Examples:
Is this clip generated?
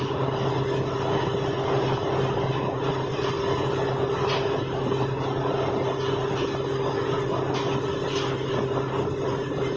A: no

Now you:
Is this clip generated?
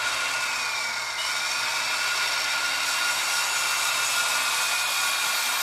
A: no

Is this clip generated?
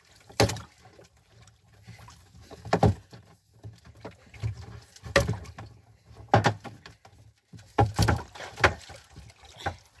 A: no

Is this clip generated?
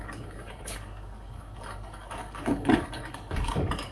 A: yes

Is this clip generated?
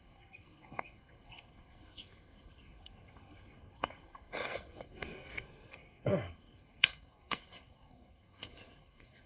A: yes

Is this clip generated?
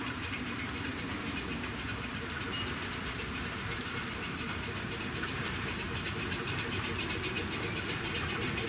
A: yes